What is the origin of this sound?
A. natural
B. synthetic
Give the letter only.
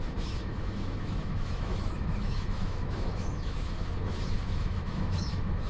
B